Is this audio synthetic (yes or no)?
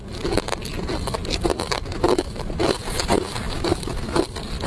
no